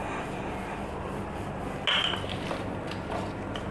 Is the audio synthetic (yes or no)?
no